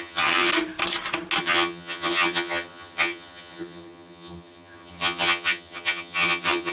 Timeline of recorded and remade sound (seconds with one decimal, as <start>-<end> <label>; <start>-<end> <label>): 0.0-0.5 remade; 0.5-1.4 recorded; 1.4-6.7 remade